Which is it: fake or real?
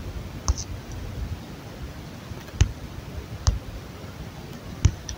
real